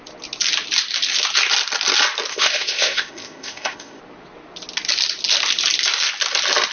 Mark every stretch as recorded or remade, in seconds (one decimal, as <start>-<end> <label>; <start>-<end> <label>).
0.0-2.3 recorded; 2.3-4.0 remade; 4.0-6.7 recorded